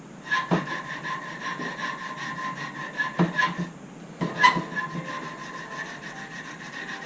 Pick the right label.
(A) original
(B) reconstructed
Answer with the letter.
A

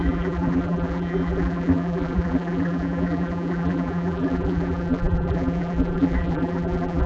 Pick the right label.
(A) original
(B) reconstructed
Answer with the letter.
B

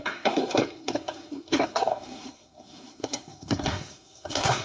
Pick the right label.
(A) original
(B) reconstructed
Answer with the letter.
B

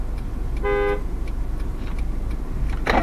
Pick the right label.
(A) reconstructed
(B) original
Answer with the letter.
B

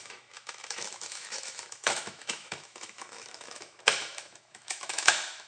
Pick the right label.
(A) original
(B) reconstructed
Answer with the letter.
B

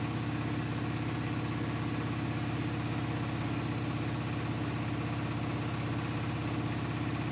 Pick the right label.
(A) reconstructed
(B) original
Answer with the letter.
B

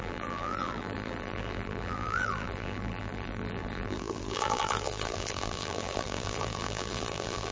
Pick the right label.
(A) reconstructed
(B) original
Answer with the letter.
A